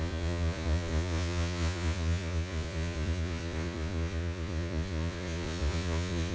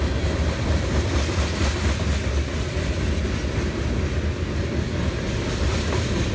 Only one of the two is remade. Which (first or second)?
first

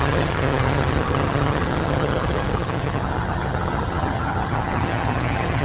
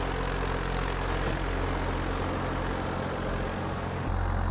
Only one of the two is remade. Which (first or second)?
first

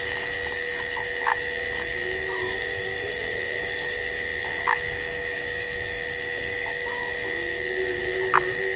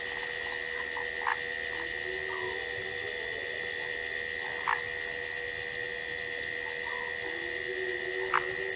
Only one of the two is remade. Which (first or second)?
first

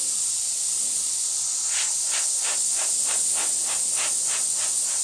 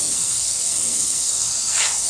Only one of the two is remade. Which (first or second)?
second